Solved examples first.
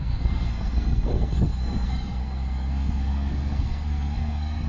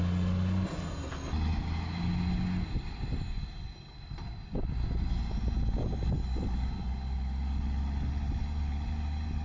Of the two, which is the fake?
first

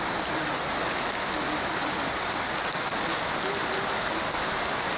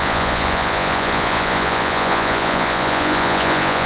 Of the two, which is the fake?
second